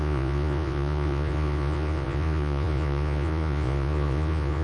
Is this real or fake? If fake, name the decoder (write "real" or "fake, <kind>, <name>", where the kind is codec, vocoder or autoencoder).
fake, vocoder, Vocos